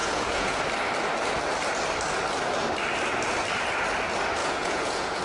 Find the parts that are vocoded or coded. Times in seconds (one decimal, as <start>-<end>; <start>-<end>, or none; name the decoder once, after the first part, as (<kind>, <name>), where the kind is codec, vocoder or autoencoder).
0.0-0.6 (vocoder, Vocos); 4.4-5.2